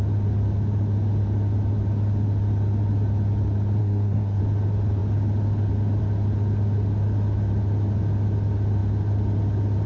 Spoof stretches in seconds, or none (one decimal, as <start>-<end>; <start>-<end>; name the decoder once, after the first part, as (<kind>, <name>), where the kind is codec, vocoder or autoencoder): 3.8-4.4 (codec, SNAC)